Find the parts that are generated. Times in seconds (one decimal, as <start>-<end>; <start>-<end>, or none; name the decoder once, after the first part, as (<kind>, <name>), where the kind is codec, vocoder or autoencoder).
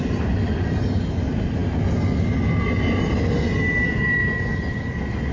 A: none